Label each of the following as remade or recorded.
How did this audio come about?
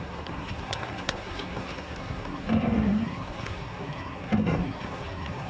remade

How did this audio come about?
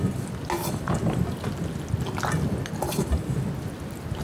recorded